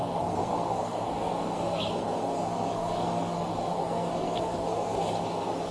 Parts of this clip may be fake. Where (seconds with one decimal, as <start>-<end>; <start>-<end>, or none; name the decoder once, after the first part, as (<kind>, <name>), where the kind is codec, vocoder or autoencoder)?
0.0-5.7 (codec, SNAC)